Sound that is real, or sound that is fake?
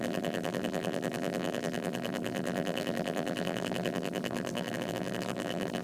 fake